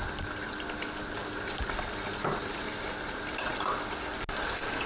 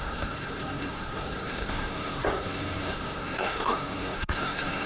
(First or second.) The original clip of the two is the first